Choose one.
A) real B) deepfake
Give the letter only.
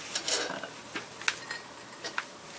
A